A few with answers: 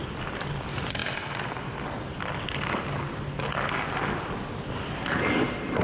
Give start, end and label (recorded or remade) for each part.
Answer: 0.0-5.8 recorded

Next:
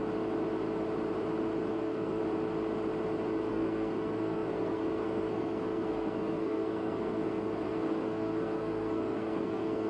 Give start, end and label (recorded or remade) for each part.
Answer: 0.0-1.7 recorded; 1.7-2.2 remade; 2.2-3.5 recorded; 3.5-9.9 remade

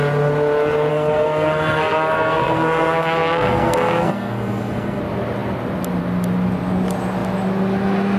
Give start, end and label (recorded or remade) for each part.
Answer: 0.0-0.9 recorded; 0.9-5.0 remade; 5.0-8.2 recorded

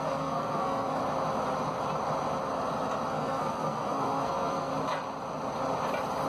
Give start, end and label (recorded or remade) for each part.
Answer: 0.0-1.0 remade; 1.0-3.1 recorded; 3.1-4.7 remade; 4.7-6.3 recorded

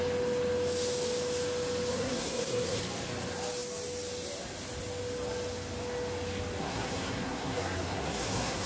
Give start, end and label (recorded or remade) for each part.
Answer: 0.0-1.9 recorded; 1.9-2.8 remade; 2.8-6.6 recorded; 6.6-8.7 remade